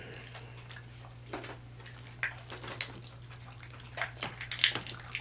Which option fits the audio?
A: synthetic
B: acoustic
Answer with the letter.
B